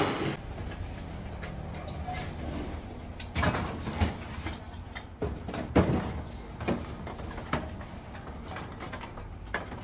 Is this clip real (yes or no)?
yes